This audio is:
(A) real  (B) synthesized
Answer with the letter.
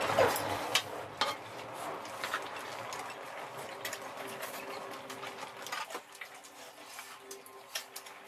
A